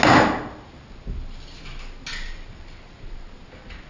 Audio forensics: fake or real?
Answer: real